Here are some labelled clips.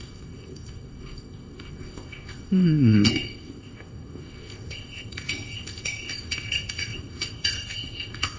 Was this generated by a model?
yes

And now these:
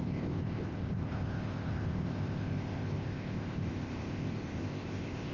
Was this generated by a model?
yes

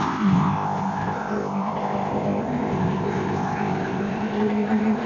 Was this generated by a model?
yes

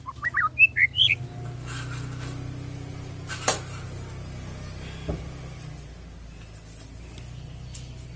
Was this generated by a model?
no